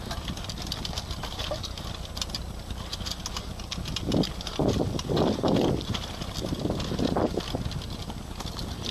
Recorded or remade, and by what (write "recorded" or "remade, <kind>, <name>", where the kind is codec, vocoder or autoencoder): recorded